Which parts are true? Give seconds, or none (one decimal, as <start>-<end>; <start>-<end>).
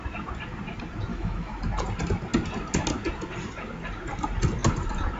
0.0-1.1; 1.6-5.2